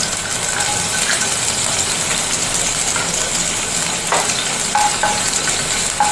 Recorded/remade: recorded